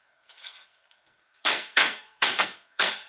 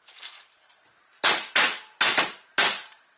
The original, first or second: second